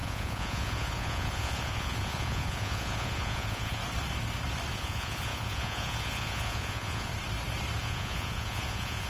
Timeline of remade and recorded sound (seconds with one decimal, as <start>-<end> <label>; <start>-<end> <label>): 0.0-3.8 remade; 3.8-4.7 recorded; 4.7-7.1 remade; 7.1-7.8 recorded; 7.8-9.1 remade